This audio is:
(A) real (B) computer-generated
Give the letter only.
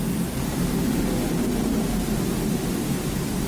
A